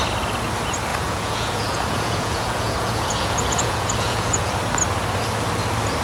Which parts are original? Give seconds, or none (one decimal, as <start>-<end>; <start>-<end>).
0.0-0.9; 4.5-6.0